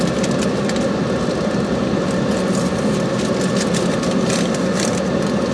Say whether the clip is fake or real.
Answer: real